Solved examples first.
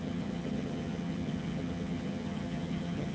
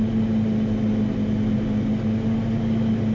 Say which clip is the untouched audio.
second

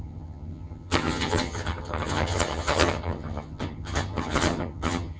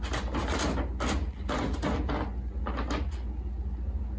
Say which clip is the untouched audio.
second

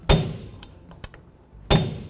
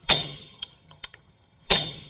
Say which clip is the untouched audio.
first